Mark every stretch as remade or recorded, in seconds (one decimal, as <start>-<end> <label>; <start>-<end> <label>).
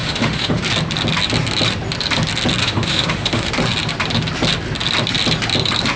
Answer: 0.0-0.6 remade; 0.6-2.6 recorded; 2.6-3.5 remade; 3.5-6.0 recorded